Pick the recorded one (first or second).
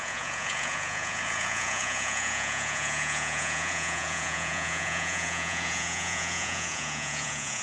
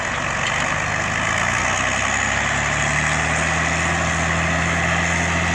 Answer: second